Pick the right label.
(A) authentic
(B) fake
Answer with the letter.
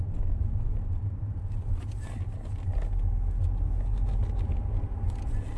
A